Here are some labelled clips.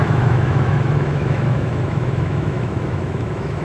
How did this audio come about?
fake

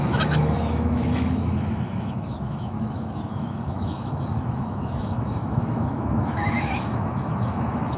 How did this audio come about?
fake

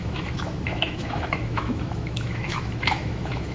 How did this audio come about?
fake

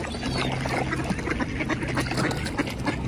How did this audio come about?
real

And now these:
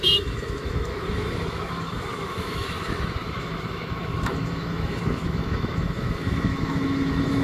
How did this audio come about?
fake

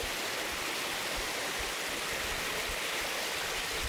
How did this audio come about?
real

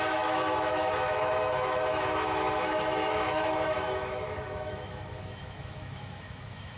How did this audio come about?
fake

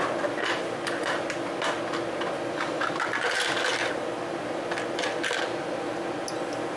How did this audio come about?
real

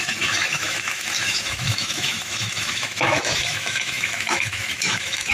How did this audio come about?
fake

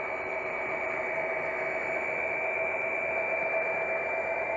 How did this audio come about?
real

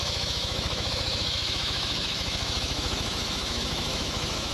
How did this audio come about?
fake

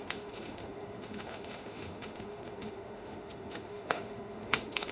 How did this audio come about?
fake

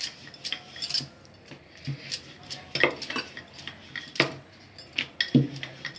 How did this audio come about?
real